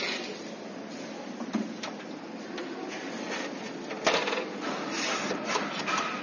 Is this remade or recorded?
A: recorded